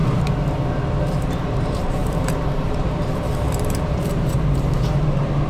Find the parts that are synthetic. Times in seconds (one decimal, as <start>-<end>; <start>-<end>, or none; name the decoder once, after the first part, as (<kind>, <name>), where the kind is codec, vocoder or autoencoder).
1.2-5.5 (vocoder, BigVGAN v2)